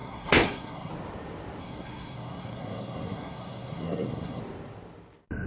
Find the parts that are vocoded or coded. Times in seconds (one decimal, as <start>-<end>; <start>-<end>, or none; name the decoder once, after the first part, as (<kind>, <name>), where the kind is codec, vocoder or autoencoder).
0.0-0.9 (codec, SNAC); 1.6-4.4